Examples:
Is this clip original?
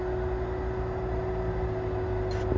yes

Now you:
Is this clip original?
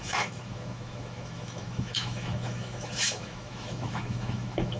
no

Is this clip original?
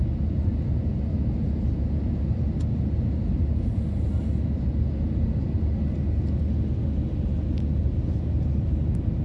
yes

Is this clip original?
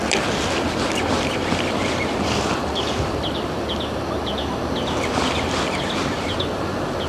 yes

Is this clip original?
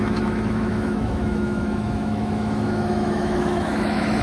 no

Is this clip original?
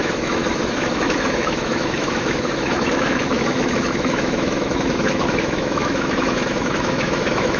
no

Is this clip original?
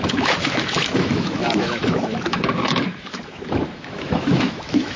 no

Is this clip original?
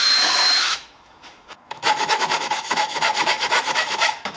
no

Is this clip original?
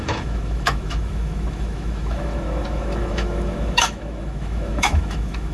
no